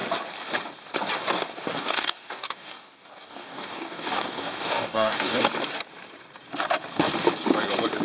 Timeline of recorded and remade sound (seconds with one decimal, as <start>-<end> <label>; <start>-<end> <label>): 0.0-1.7 recorded; 1.7-5.4 remade; 5.4-8.0 recorded